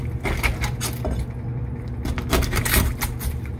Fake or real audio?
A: real